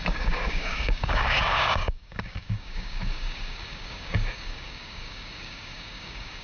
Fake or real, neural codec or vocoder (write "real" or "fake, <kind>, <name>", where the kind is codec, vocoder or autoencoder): fake, codec, DAC